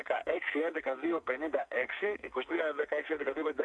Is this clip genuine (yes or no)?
no